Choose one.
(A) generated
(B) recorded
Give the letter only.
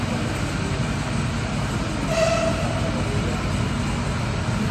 B